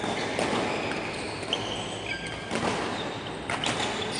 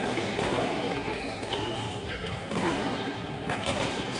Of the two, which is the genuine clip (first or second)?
first